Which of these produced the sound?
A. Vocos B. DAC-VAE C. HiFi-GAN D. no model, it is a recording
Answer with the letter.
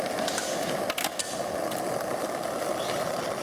D